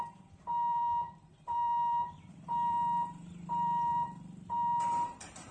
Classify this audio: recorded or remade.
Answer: remade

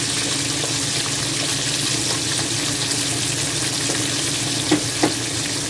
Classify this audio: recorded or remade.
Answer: recorded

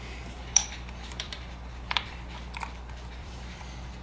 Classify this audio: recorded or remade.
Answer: remade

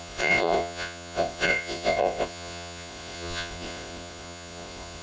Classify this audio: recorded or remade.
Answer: remade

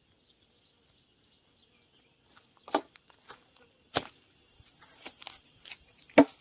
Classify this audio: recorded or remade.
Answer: recorded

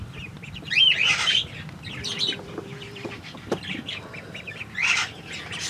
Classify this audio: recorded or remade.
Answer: remade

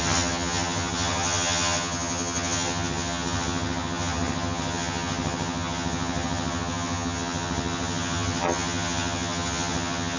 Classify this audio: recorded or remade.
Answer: remade